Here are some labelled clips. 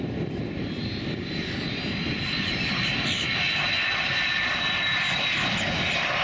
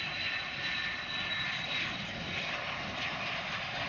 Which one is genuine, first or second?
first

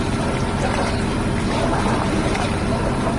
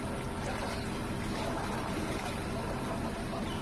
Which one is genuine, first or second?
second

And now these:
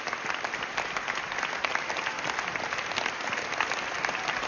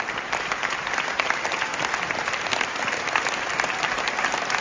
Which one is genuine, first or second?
first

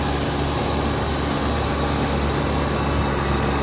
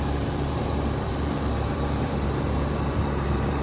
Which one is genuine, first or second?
first